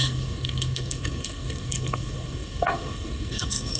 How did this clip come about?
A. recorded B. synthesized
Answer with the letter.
B